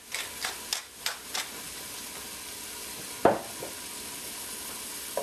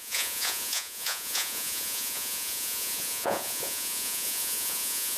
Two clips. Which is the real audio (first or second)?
first